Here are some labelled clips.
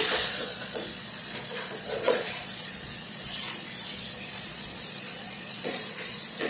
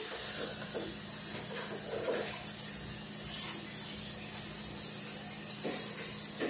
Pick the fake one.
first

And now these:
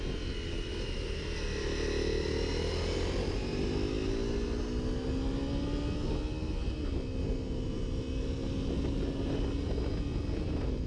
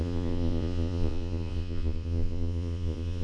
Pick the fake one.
second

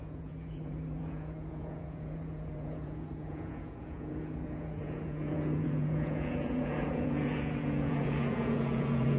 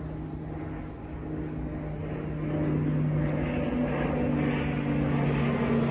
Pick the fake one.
first